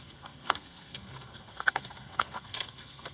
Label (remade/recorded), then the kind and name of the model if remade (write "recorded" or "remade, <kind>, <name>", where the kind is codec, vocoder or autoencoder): remade, codec, SNAC